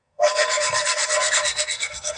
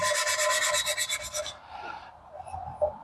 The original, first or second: second